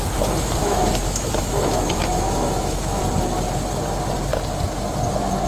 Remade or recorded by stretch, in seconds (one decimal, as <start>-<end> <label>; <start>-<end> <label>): 0.0-0.6 recorded; 0.6-3.0 remade; 3.0-5.5 recorded